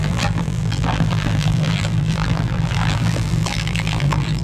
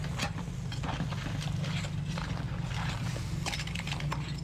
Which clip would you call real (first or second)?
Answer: second